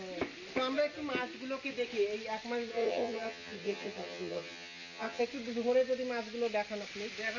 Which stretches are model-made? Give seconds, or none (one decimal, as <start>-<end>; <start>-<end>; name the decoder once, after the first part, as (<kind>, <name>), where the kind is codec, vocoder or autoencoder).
2.7-5.2 (vocoder, HiFi-GAN)